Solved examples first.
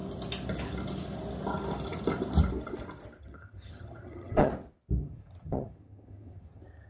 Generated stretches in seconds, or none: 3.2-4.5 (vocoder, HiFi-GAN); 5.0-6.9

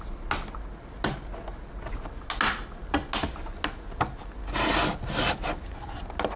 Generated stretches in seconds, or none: none

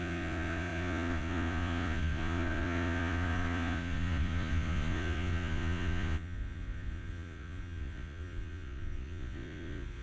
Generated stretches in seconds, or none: 0.0-10.0 (vocoder, Vocos)

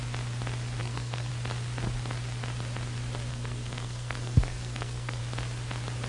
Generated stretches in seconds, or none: 0.8-1.3 (codec, SNAC); 3.3-5.2